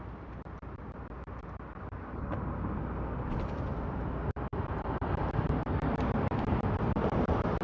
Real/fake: fake